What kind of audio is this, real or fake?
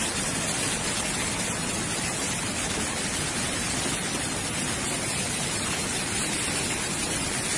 real